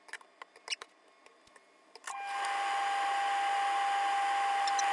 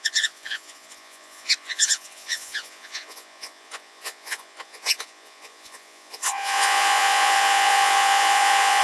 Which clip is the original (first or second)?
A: first